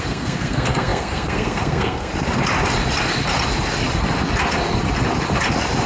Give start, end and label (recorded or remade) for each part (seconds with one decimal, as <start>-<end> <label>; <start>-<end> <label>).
0.0-2.1 remade; 2.1-5.9 recorded